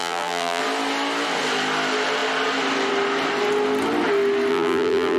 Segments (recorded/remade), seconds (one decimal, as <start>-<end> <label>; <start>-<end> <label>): 0.0-0.6 remade; 0.6-4.5 recorded; 4.5-5.2 remade